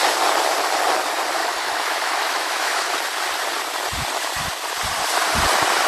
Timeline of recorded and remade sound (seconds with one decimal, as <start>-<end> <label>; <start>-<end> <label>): 0.0-1.4 recorded; 1.4-2.9 remade; 2.9-5.9 recorded